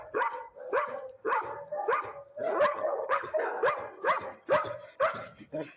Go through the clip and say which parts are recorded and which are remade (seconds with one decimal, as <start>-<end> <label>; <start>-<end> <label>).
0.0-2.7 recorded; 2.7-3.3 remade; 3.3-5.8 recorded